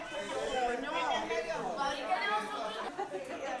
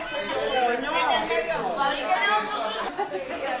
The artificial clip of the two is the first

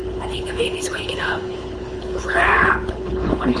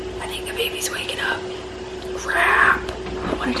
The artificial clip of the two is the first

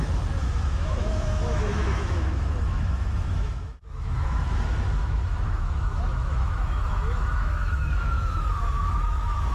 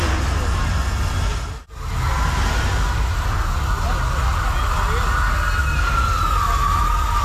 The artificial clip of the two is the first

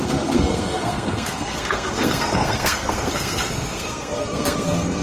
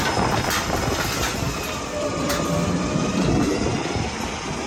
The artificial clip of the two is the first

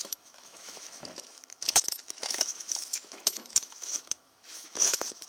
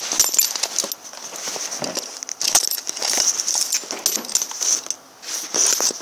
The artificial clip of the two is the first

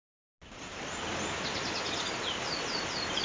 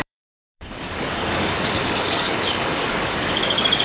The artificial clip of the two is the second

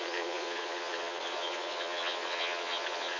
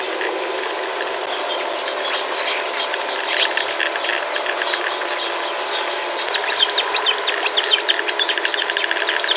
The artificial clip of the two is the first